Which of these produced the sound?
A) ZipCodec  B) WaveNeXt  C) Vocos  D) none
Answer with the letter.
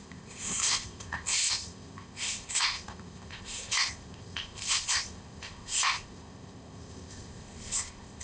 A